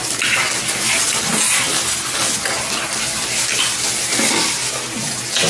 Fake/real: real